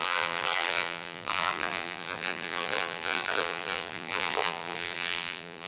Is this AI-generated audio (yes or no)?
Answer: yes